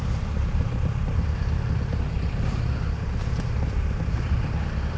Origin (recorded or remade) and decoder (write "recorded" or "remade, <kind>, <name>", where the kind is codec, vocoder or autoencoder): remade, vocoder, BigVGAN v2